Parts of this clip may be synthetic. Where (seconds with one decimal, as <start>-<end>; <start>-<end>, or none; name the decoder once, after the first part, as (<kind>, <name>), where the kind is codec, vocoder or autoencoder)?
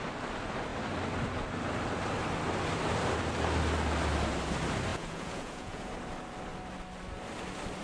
4.9-5.9 (vocoder, Vocos)